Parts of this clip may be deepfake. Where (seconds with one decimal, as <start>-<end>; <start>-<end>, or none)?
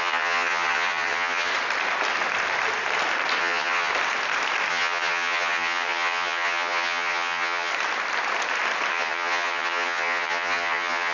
0.0-1.5; 3.4-3.9; 4.7-7.7; 8.9-11.1